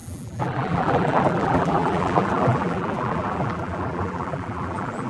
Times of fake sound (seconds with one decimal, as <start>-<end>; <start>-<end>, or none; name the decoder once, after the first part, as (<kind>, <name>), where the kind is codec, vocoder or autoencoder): 0.0-5.1 (vocoder, BigVGAN v2)